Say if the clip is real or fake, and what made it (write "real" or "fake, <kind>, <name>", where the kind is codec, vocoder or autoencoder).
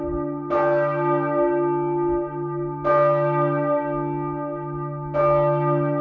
real